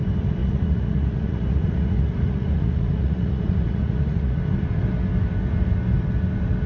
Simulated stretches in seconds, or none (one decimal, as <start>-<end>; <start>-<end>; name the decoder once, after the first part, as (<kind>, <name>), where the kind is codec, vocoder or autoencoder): 0.4-4.4 (vocoder, Vocos)